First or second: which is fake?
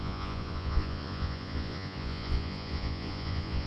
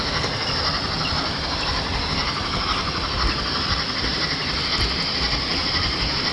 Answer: first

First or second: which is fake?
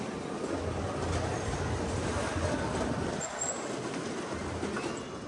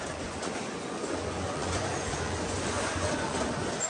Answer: second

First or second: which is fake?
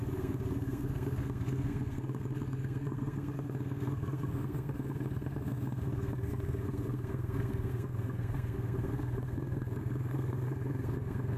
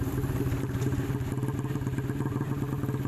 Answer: first